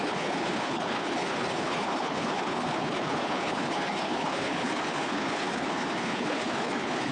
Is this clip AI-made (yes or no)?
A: yes